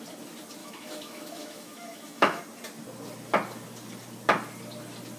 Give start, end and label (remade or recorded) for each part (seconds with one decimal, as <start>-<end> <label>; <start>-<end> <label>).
0.0-0.6 recorded; 0.6-2.4 remade; 2.4-5.2 recorded